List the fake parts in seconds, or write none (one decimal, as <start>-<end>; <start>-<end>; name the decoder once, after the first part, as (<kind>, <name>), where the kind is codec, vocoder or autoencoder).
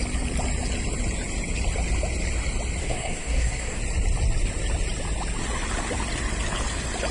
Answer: 2.8-3.8 (codec, SNAC)